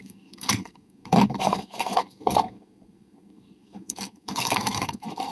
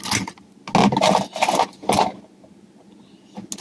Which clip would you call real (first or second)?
second